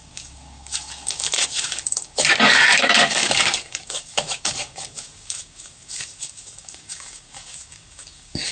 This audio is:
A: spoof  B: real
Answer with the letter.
A